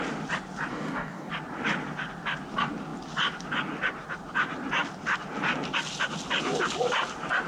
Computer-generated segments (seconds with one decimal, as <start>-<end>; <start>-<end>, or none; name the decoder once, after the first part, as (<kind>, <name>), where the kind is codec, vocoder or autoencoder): 0.7-1.3 (codec, DAC)

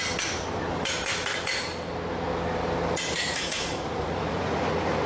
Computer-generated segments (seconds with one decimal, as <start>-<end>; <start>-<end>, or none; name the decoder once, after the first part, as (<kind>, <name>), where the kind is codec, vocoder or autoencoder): 3.1-5.1 (vocoder, Vocos)

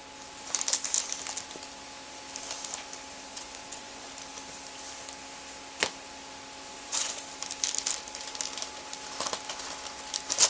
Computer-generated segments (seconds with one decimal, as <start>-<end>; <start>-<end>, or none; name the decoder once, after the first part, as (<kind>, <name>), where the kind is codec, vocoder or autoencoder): 3.3-4.1 (vocoder, Vocos); 6.7-7.2

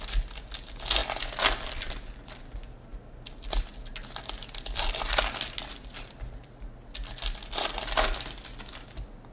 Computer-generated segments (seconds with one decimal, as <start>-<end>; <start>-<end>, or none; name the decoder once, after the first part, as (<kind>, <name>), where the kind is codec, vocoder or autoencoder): none

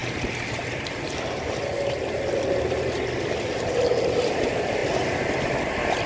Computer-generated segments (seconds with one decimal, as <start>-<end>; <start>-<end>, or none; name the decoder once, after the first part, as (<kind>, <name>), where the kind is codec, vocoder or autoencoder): none

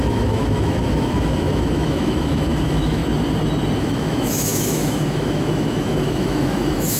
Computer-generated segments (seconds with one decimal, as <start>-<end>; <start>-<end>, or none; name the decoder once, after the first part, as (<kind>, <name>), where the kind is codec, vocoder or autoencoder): 0.0-3.0 (autoencoder, DAC-VAE); 3.8-7.0